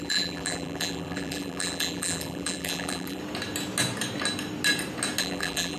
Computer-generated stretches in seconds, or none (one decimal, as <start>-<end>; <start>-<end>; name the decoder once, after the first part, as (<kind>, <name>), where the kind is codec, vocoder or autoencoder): 0.0-3.2 (vocoder, BigVGAN v2); 5.2-5.8